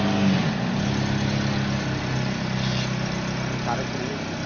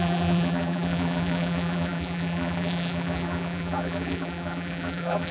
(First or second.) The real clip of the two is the first